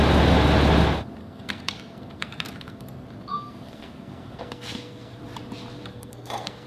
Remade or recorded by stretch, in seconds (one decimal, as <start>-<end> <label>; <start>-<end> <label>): 0.0-1.2 recorded; 1.2-5.2 remade; 5.2-5.9 recorded; 5.9-6.7 remade